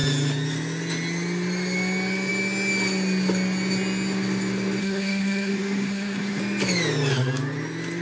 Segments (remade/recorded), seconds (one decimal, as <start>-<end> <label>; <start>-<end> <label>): 0.0-4.8 recorded; 4.8-6.4 remade; 6.4-8.0 recorded